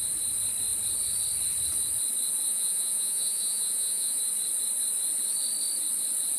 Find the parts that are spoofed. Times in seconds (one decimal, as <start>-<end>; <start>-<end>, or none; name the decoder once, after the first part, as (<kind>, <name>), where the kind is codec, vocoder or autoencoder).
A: 2.5-4.2 (vocoder, Vocos)